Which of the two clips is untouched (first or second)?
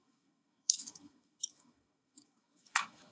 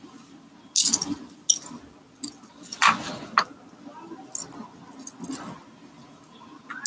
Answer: second